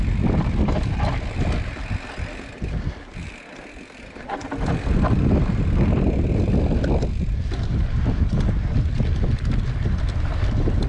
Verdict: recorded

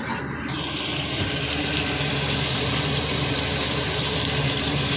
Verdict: recorded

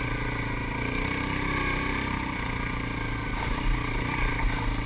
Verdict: recorded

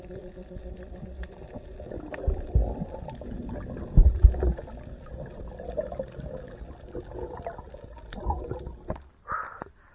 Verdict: recorded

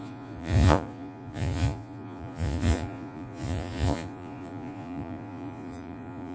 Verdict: remade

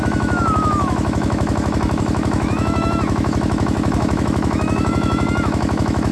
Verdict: remade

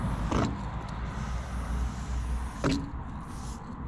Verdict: recorded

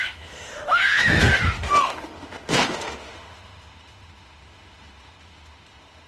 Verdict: remade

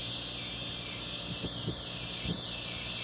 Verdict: recorded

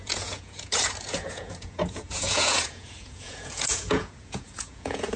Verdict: remade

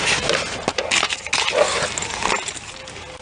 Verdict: recorded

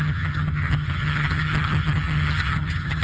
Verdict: remade